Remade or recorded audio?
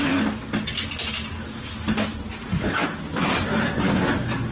recorded